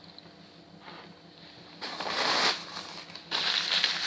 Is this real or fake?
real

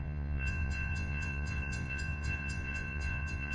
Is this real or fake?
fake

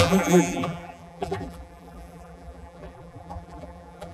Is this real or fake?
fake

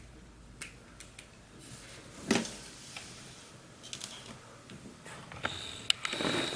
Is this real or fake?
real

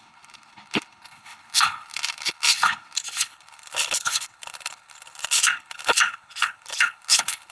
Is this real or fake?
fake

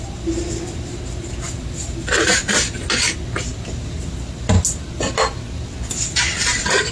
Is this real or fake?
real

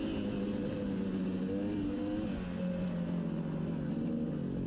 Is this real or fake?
real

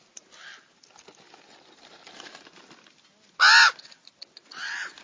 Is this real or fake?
real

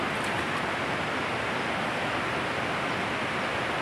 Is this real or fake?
real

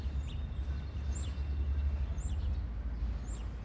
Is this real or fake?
real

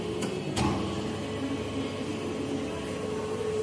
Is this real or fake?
real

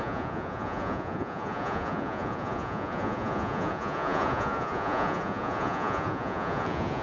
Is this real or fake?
fake